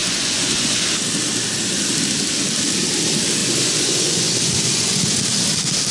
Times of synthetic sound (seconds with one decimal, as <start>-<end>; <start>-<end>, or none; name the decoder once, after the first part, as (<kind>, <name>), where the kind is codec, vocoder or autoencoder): 0.0-1.0 (vocoder, Vocos); 3.4-5.2